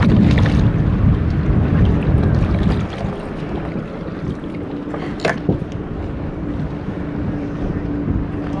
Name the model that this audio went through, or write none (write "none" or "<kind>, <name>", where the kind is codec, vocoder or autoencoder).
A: none